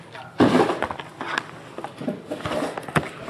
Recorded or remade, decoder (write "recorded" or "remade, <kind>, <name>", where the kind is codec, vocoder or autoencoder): recorded